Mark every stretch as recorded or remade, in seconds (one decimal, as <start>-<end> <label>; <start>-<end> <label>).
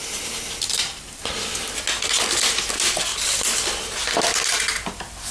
0.0-5.3 recorded